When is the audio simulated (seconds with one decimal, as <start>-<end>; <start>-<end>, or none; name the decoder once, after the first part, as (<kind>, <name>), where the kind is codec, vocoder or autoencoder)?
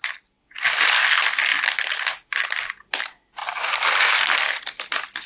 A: none